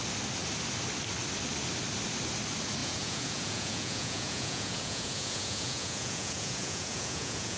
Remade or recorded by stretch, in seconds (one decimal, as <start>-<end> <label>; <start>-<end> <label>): 0.0-2.8 recorded; 2.8-7.6 remade